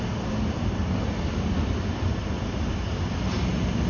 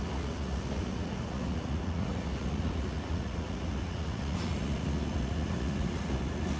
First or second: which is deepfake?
second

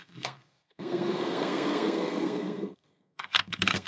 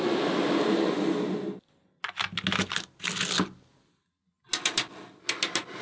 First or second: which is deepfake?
first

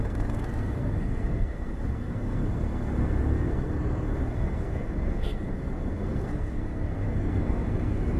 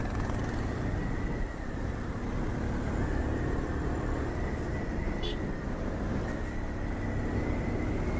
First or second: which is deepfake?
first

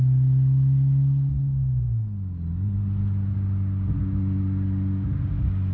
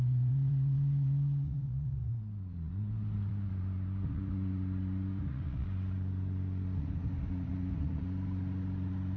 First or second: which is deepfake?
second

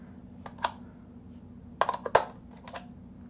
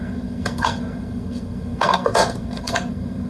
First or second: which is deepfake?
second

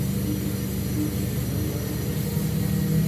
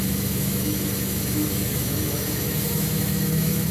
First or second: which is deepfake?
second